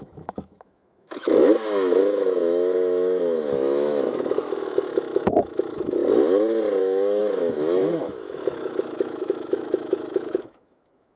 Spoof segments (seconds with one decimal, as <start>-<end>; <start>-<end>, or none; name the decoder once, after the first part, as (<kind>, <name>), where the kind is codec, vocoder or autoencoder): 0.0-6.0 (autoencoder, DAC-VAE); 6.8-11.2